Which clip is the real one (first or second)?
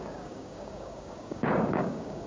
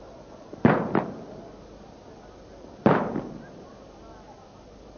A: second